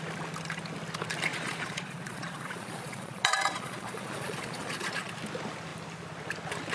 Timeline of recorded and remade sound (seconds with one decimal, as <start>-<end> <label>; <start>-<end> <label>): 0.0-1.3 recorded; 1.3-5.1 remade; 5.1-6.7 recorded